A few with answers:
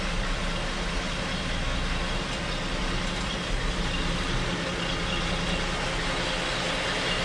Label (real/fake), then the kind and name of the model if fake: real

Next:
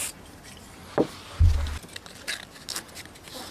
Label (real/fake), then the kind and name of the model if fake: real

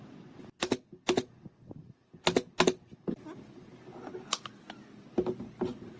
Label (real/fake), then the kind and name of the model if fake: real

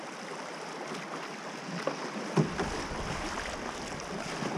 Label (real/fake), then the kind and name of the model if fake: real